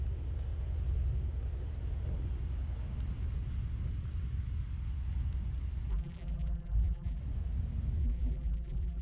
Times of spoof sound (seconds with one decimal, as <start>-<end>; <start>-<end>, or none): 5.9-7.2; 8.0-9.0